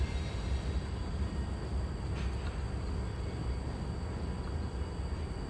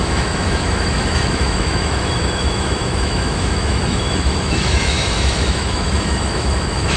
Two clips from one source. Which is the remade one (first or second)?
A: second